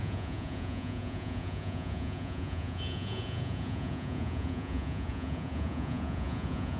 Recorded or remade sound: remade